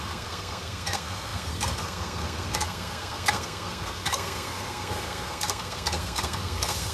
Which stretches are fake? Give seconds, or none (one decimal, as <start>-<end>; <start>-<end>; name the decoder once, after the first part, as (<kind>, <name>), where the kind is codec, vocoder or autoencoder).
0.0-6.9 (codec, SNAC)